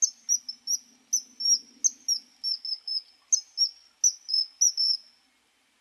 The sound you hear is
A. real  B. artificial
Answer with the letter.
A